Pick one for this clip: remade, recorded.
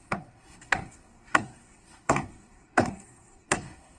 remade